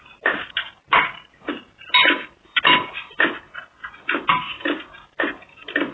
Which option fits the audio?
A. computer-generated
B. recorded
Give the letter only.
B